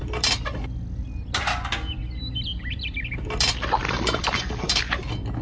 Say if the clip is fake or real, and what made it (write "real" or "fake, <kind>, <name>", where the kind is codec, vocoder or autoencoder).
real